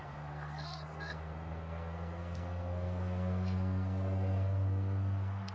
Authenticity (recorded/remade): remade